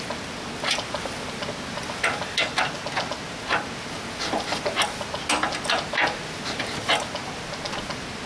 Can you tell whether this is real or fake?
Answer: real